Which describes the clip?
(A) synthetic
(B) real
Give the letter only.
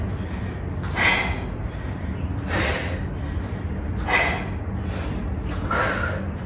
B